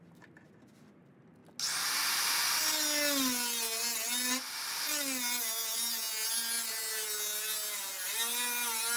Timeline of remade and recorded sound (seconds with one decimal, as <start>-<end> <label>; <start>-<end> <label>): 0.0-9.0 recorded